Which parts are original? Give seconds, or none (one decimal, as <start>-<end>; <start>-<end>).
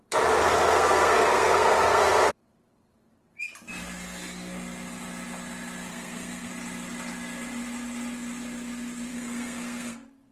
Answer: 0.0-0.4; 2.3-5.9; 6.5-9.1